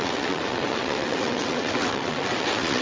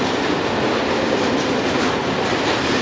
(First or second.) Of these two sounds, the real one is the second